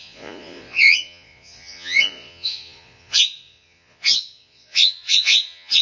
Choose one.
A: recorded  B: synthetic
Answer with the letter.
B